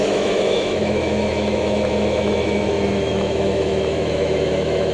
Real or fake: fake